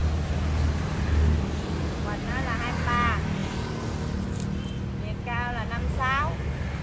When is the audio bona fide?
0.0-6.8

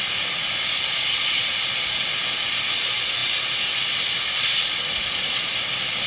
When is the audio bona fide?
0.0-6.1

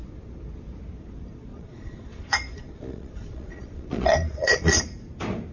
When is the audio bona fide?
0.0-1.5; 4.8-5.5

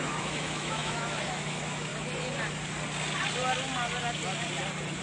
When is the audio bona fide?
1.9-5.0

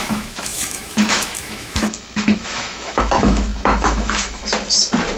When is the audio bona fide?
4.4-5.2

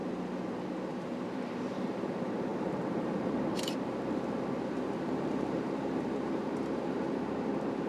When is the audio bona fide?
0.0-1.0